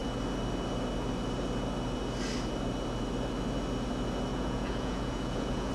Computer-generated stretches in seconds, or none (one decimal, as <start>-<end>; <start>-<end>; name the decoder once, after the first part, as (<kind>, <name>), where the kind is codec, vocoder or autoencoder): 4.3-5.7 (vocoder, Vocos)